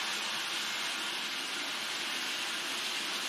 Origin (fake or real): real